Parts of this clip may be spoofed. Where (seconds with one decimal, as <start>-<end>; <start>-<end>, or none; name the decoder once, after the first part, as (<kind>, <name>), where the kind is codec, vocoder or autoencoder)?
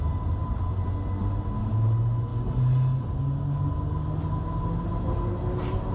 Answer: 0.4-1.2 (vocoder, BigVGAN v2)